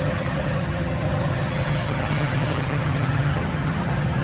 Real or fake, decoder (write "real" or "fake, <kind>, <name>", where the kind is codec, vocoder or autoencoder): fake, vocoder, HiFi-GAN